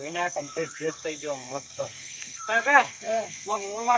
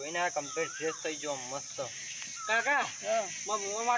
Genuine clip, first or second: second